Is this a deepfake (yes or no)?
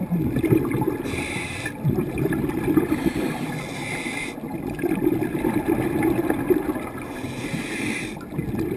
no